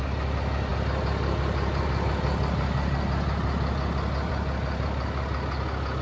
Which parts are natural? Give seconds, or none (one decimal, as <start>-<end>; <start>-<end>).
0.0-6.0